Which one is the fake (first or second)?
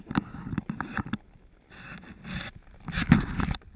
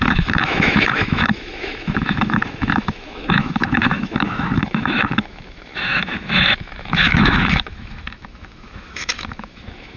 second